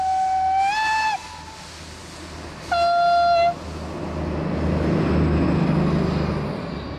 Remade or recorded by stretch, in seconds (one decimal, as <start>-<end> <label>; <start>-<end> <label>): 0.0-7.0 recorded